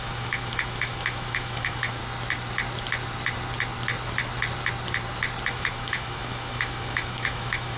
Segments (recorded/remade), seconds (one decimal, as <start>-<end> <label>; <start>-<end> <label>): 0.0-2.0 remade; 2.0-5.5 recorded; 5.5-7.8 remade